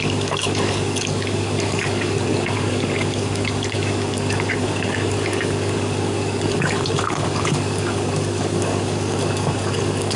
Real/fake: fake